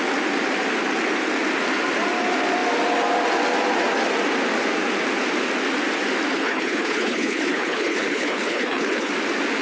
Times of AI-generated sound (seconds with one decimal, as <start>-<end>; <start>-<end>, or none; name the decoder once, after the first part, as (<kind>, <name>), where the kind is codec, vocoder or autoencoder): 6.3-9.1 (codec, HILCodec)